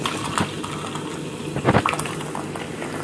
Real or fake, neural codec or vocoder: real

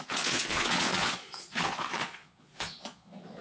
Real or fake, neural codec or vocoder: fake, vocoder, Vocos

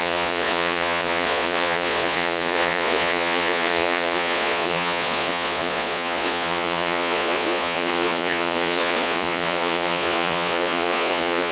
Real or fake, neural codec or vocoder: fake, vocoder, Vocos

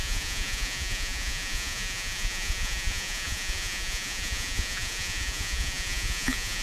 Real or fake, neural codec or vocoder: fake, vocoder, Vocos